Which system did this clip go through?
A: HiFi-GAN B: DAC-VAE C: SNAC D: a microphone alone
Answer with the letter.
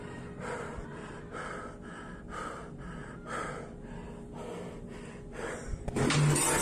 D